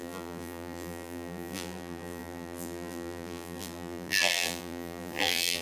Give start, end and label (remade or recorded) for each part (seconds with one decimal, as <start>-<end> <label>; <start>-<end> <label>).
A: 0.0-5.6 remade